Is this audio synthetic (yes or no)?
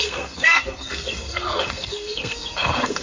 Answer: yes